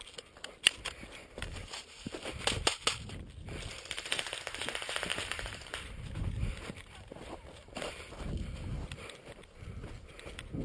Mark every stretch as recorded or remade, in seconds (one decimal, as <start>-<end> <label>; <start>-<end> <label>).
0.0-1.2 recorded; 1.2-2.1 remade; 2.1-5.1 recorded; 5.1-8.2 remade; 8.2-10.6 recorded